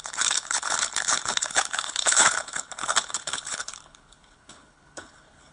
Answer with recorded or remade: remade